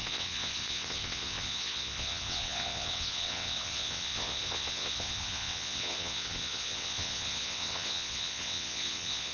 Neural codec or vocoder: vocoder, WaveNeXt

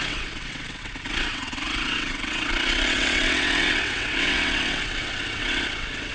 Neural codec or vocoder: vocoder, WaveNeXt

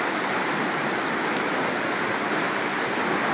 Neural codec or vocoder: none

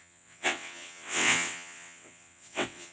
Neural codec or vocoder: vocoder, WaveNeXt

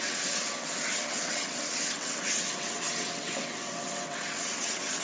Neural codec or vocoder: vocoder, WaveNeXt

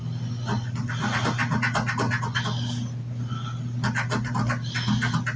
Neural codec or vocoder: none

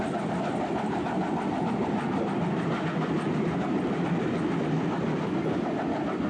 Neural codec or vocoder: none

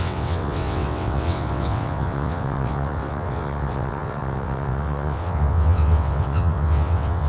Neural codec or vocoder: vocoder, WaveNeXt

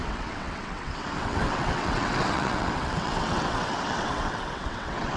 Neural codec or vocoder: vocoder, WaveNeXt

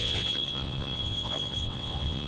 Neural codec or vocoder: vocoder, WaveNeXt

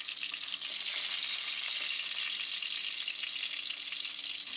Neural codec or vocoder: none